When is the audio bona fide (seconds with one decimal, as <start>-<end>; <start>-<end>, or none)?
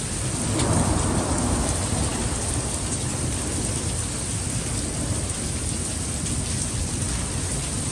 0.0-7.9